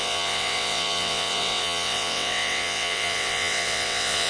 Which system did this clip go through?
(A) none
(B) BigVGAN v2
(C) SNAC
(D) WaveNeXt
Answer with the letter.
D